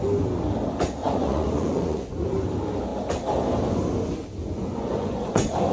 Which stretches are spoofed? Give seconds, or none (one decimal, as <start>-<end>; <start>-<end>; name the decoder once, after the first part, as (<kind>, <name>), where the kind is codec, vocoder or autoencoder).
1.0-2.1 (vocoder, Vocos); 4.4-5.7